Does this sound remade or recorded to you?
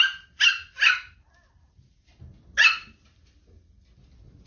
recorded